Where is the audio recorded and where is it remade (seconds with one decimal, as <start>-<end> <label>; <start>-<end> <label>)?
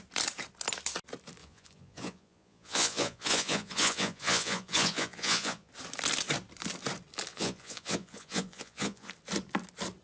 0.0-1.4 recorded; 1.4-5.7 remade; 5.7-7.3 recorded; 7.3-9.1 remade; 9.1-10.0 recorded